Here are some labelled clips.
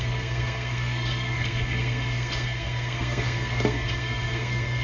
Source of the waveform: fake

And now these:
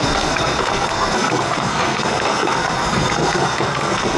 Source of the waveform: fake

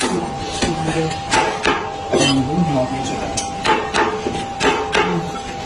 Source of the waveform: real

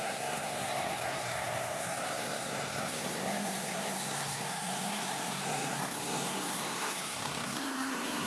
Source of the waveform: fake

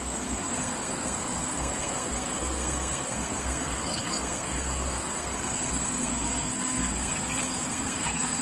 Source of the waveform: fake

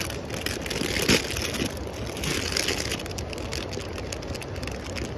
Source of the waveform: real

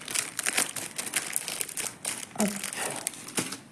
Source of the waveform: real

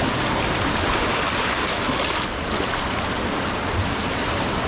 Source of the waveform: real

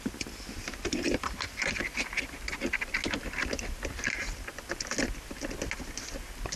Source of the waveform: real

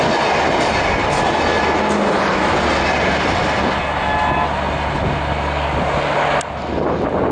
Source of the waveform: real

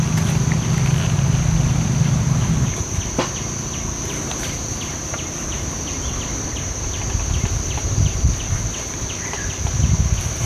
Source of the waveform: real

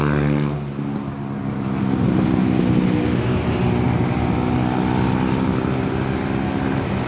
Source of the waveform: real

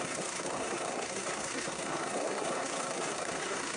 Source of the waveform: fake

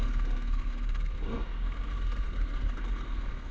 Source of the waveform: fake